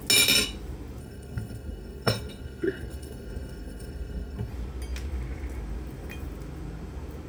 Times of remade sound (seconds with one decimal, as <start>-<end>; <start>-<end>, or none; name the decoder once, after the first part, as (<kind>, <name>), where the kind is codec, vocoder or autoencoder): 1.0-4.5 (codec, SNAC)